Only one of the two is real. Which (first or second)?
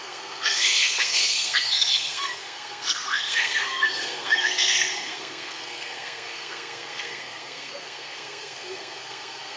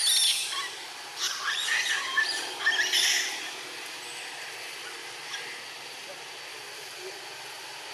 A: second